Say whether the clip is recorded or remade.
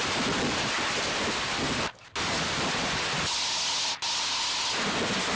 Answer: recorded